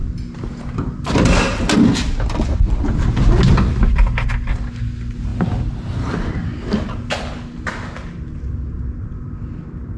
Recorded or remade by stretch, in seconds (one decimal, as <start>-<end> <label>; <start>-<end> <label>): 0.0-10.0 recorded